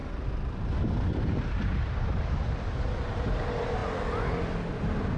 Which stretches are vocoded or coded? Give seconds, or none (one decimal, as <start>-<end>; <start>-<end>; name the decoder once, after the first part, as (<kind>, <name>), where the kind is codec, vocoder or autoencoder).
1.2-3.8 (vocoder, BigVGAN v2); 4.7-5.2